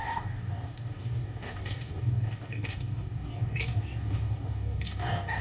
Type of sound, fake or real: fake